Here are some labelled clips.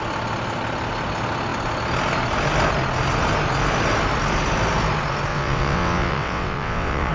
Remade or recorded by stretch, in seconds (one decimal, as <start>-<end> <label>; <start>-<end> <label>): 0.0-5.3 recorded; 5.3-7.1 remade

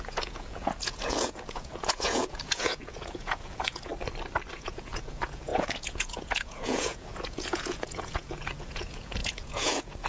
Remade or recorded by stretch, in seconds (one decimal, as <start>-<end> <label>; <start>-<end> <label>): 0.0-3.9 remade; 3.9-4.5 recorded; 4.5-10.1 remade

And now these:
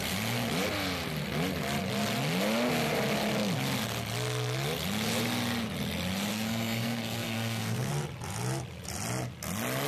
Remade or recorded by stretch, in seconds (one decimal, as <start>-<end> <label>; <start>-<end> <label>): 0.0-6.3 recorded; 6.3-7.9 remade; 7.9-9.9 recorded

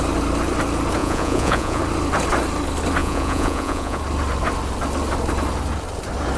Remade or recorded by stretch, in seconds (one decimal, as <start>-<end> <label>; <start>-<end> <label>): 0.0-1.0 recorded; 1.0-1.8 remade; 1.8-3.0 recorded; 3.0-4.0 remade; 4.0-6.4 recorded

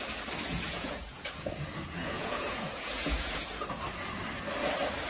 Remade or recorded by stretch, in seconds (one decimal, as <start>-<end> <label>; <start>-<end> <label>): 0.0-0.7 recorded; 0.7-3.8 remade; 3.8-5.1 recorded